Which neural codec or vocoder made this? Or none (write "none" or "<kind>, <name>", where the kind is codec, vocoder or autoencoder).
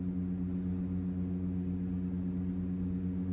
none